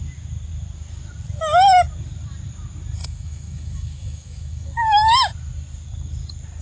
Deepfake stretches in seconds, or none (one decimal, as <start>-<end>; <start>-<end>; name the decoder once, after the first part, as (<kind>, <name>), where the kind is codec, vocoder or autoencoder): 3.0-5.3 (autoencoder, DAC-VAE)